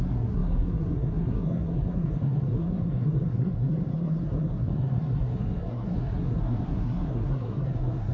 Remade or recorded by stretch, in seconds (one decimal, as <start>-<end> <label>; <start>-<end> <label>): 0.0-8.1 remade